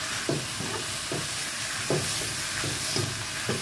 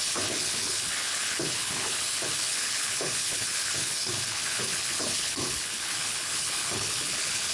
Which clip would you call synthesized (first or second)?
second